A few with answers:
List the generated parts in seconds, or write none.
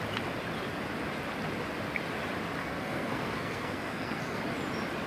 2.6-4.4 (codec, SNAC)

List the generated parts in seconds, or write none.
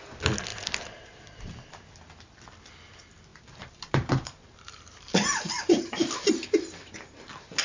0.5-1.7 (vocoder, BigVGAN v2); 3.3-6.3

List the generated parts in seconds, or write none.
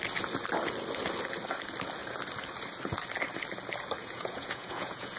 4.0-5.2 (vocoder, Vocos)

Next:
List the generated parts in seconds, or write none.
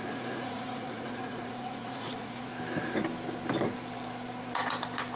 0.0-2.5 (vocoder, Vocos)